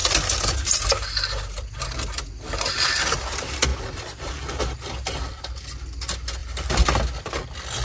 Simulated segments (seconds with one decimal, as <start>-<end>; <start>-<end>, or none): none